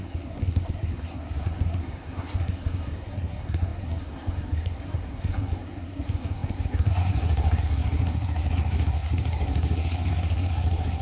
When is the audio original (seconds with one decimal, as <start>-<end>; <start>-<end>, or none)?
none